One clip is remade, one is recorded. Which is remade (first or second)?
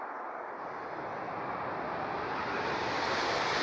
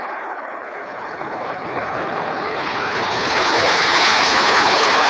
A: second